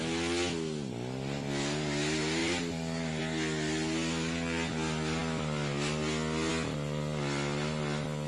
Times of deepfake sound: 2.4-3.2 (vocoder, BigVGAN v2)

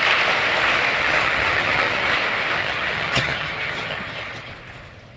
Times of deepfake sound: 1.0-2.1 (vocoder, HiFi-GAN); 2.6-4.5